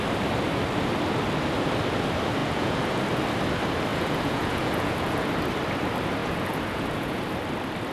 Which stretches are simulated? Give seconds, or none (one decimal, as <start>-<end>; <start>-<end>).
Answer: 2.4-3.0; 3.9-5.3; 6.2-7.2